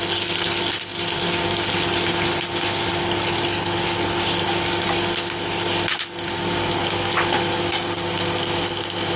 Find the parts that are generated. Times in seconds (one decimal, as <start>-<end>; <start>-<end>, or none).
none